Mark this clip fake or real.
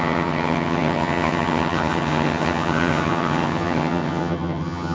fake